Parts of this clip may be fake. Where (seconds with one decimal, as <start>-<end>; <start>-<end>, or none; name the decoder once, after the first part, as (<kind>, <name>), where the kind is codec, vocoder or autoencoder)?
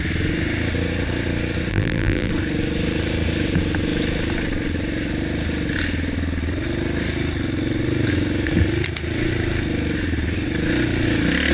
1.7-2.3 (vocoder, BigVGAN v2)